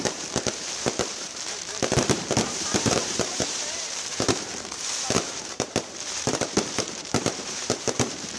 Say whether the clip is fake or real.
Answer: fake